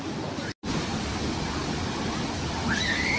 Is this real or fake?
real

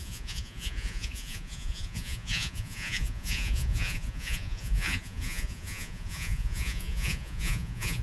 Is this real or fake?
fake